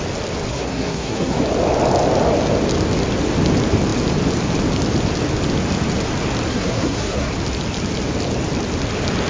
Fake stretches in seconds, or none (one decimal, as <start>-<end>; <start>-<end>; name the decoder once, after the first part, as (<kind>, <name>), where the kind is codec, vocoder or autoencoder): 0.5-1.4 (codec, SNAC); 6.5-7.3